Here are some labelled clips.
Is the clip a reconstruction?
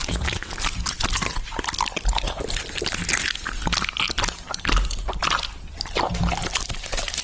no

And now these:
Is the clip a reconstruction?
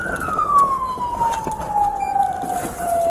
no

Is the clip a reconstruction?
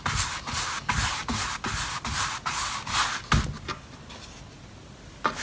no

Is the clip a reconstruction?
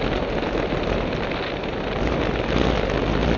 no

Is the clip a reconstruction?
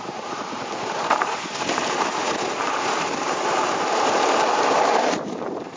yes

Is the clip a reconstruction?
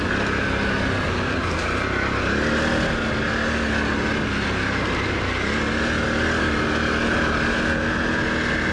no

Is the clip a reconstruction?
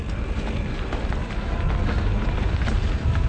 no